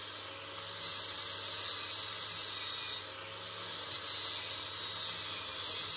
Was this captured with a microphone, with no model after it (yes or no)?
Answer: yes